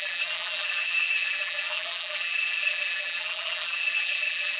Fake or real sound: fake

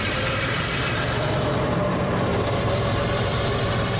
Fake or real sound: fake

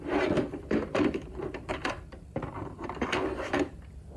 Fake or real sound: fake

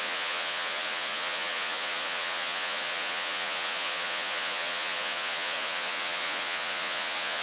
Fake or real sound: fake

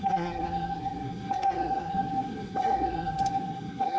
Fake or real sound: fake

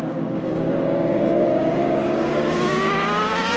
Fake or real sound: fake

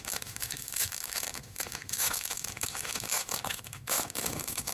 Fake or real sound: fake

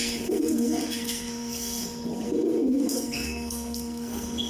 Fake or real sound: fake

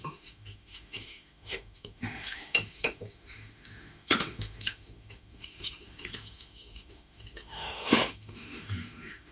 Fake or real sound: fake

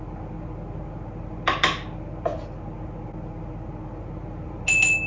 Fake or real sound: real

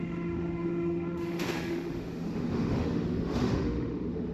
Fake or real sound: fake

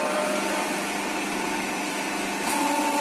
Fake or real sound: fake